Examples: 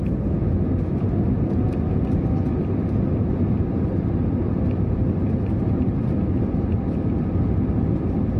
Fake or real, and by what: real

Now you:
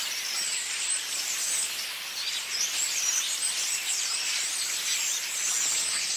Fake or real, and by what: real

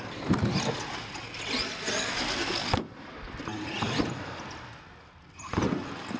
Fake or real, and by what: real